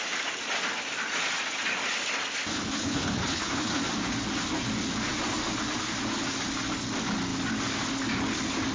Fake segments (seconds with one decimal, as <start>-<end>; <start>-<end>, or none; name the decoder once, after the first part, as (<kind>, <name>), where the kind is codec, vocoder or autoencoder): 2.5-3.8 (codec, HILCodec)

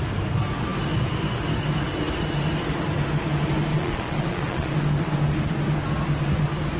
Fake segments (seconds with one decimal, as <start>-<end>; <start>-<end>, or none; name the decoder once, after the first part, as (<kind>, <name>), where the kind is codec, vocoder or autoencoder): 3.7-4.7 (vocoder, Vocos)

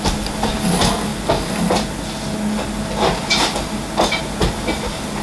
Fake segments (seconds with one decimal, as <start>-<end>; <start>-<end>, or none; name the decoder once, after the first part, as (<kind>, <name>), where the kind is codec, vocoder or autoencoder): none

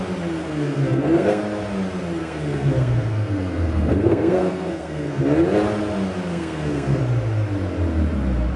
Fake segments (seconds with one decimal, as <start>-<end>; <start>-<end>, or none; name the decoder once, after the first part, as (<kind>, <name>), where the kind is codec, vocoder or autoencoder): 0.4-1.4 (codec, SNAC); 2.2-5.2; 6.3-7.0

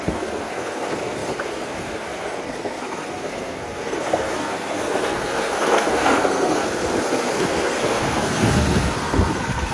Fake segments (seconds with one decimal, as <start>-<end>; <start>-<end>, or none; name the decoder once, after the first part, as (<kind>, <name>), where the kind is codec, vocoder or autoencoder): 0.0-9.7 (codec, SNAC)

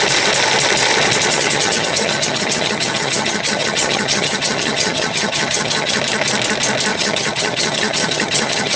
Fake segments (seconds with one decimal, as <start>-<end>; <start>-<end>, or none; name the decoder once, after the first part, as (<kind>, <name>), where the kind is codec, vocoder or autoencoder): 1.3-6.0 (vocoder, HiFi-GAN); 6.9-8.8

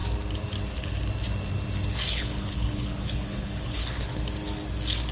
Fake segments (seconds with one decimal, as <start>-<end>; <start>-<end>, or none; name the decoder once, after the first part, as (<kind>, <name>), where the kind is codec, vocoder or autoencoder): 2.1-4.2 (codec, HILCodec)

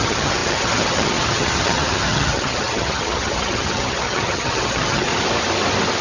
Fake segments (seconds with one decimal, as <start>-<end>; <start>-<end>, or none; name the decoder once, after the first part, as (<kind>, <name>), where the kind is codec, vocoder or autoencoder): 0.0-5.1 (vocoder, HiFi-GAN)